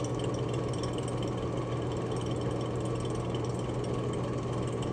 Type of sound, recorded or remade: recorded